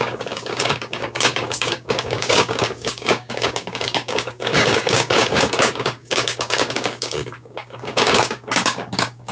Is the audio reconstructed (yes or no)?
yes